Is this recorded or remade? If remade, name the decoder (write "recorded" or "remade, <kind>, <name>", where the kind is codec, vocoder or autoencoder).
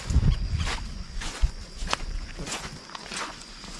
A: remade, vocoder, Vocos